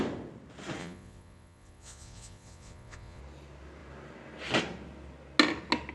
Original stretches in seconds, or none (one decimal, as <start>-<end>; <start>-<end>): 0.0-0.8; 3.2-5.9